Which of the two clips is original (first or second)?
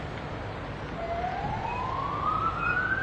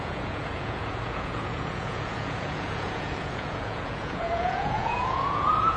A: first